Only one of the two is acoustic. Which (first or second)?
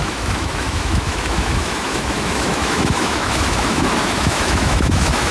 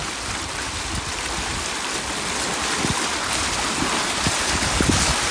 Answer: second